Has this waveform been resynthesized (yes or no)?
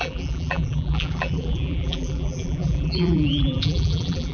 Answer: yes